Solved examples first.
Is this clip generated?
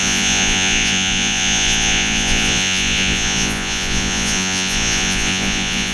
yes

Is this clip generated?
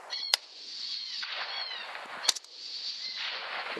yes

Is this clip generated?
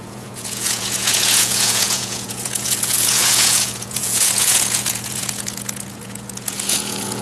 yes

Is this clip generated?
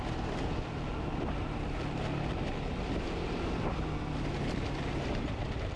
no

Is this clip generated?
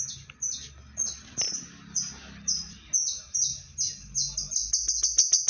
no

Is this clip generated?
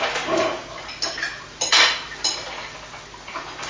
no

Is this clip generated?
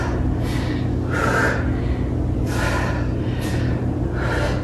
no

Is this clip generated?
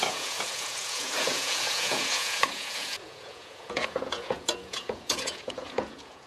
yes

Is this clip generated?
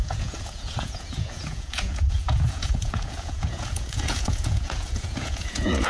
yes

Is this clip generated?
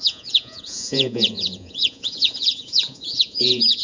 yes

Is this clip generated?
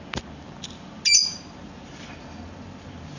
no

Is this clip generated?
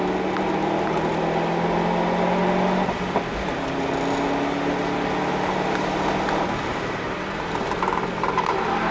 no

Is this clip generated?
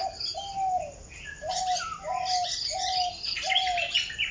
no